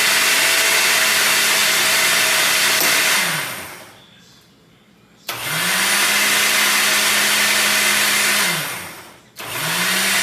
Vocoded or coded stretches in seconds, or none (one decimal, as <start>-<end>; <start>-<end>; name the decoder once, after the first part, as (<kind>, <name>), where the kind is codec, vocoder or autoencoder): none